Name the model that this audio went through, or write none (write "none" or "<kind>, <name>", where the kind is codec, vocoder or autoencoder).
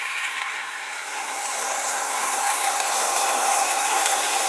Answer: codec, SNAC